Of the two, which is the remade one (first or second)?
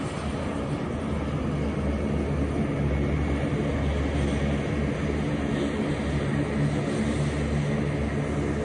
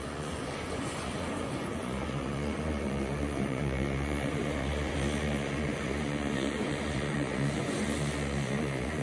second